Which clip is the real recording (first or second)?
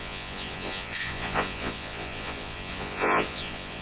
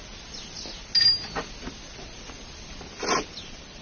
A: second